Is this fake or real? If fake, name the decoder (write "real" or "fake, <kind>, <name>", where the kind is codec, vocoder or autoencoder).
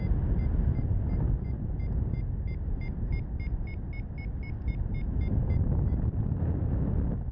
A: real